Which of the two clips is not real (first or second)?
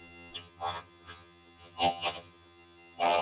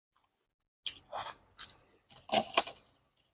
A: first